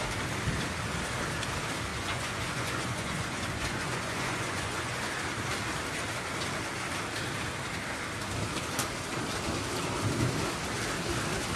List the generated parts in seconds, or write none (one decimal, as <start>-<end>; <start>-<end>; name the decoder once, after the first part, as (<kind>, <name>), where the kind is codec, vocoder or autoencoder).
1.9-5.2 (vocoder, Vocos)